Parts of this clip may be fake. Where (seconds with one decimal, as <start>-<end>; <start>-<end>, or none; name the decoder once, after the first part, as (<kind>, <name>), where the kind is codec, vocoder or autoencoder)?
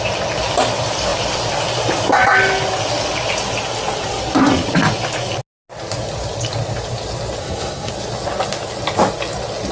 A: 7.4-7.9 (codec, SNAC)